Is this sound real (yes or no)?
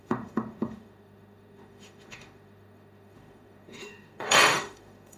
no